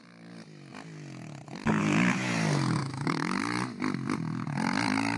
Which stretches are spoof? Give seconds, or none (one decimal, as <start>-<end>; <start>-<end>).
2.8-3.4